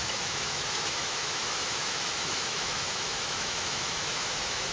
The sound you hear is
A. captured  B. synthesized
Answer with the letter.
B